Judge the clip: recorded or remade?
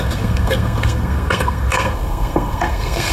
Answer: remade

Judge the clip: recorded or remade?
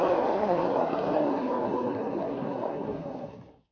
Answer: remade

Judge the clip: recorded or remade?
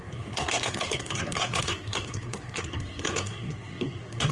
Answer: remade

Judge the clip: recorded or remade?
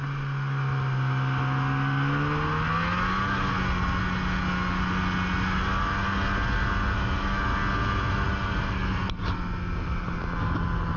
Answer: recorded